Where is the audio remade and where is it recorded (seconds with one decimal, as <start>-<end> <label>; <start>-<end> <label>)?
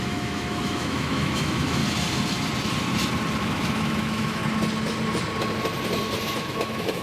0.0-1.8 remade; 1.8-3.4 recorded; 3.4-4.4 remade; 4.4-6.4 recorded; 6.4-7.0 remade